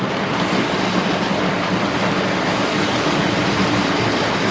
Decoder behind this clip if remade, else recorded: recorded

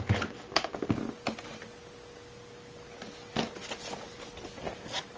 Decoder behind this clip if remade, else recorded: recorded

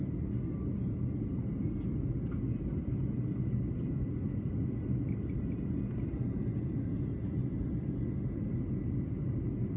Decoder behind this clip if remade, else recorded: recorded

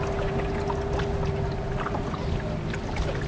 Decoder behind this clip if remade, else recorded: recorded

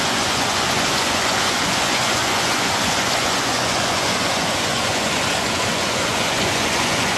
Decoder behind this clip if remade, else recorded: remade, vocoder, Vocos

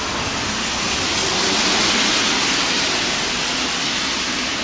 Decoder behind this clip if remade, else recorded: recorded